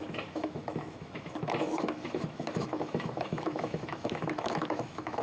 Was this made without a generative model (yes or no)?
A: no